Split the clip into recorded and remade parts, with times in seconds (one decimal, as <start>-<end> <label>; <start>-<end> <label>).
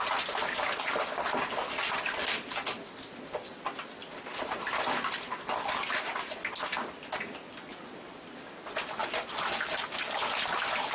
0.0-10.9 recorded